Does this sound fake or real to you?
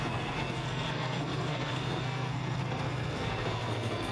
fake